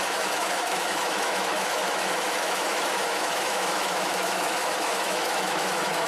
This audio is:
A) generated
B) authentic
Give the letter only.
A